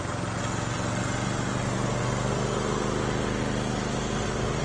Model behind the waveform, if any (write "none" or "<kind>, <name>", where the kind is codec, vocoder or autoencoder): none